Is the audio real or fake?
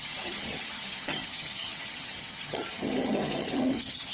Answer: fake